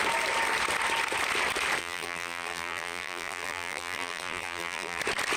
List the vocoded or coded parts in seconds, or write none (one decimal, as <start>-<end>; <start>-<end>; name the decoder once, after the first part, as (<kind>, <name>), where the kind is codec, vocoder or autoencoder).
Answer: 1.8-5.0 (vocoder, BigVGAN v2)